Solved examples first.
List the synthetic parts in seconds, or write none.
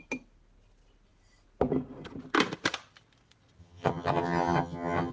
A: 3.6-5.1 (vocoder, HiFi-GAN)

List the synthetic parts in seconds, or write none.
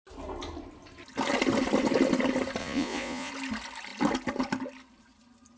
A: 2.6-3.3 (vocoder, Vocos)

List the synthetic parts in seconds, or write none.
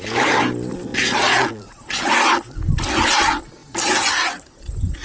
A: 0.9-2.1 (vocoder, Vocos)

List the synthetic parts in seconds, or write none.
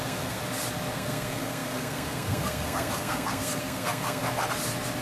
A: 0.0-0.4 (codec, SNAC); 0.9-4.2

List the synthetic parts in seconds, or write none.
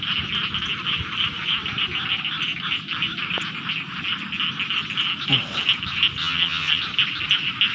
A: 6.2-6.8 (vocoder, HiFi-GAN)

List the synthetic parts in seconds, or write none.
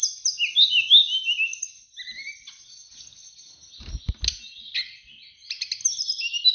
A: none